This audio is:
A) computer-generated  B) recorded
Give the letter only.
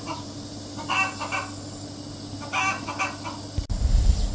B